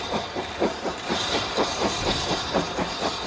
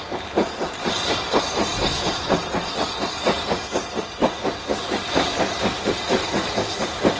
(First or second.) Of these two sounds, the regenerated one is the first